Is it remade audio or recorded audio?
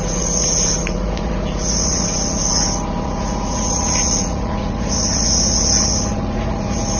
remade